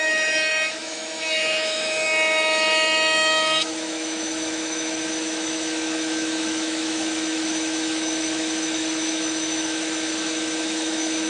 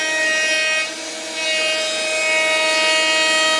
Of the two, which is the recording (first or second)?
second